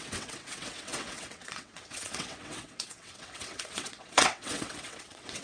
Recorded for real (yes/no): no